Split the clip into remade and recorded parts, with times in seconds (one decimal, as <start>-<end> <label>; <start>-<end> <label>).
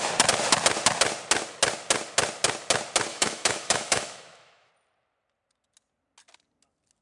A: 0.0-3.1 recorded; 3.1-4.7 remade; 4.7-7.0 recorded